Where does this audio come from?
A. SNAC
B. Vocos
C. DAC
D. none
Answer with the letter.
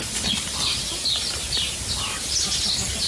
D